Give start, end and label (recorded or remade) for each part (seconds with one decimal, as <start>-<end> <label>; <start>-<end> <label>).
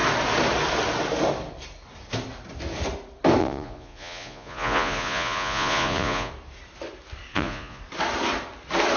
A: 0.0-3.4 recorded; 3.4-6.3 remade; 6.3-7.3 recorded; 7.3-7.8 remade; 7.8-9.0 recorded